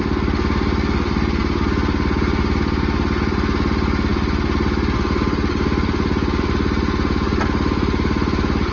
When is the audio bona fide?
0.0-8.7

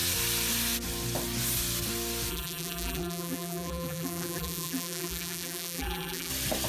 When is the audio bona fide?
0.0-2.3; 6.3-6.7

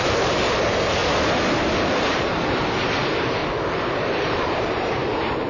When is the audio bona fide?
1.0-2.0; 3.4-4.0